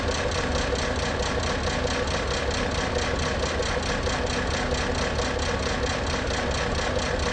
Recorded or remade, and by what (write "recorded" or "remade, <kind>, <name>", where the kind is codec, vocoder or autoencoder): recorded